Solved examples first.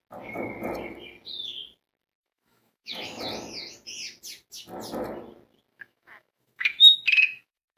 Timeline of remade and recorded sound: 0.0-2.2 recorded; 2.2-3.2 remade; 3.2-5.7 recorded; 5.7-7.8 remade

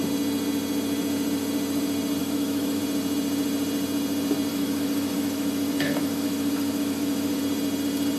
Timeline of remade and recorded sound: 0.0-2.2 recorded; 2.2-2.8 remade; 2.8-4.5 recorded; 4.5-7.4 remade; 7.4-8.2 recorded

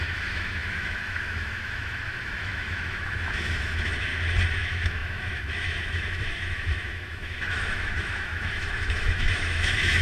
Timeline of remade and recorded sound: 0.0-4.1 remade; 4.1-4.6 recorded; 4.6-10.0 remade